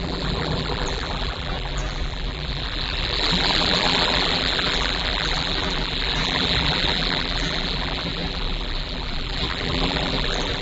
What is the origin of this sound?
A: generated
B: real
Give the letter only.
A